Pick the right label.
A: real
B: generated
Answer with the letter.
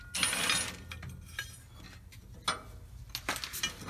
A